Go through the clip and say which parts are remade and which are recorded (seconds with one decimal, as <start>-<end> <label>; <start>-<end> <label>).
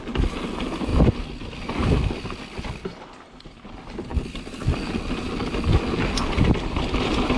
0.0-7.4 recorded